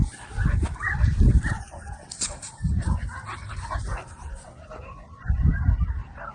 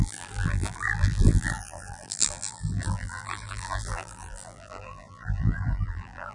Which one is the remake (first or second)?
second